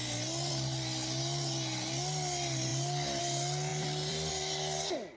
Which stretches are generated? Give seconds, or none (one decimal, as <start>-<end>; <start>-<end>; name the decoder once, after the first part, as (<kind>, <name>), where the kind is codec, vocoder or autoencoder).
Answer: 3.7-4.3 (vocoder, BigVGAN v2)